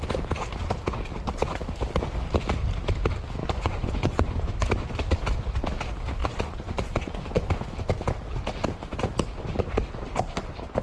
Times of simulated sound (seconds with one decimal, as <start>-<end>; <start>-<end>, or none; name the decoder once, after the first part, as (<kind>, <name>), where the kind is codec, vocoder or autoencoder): 3.4-4.7 (vocoder, Vocos); 6.2-7.5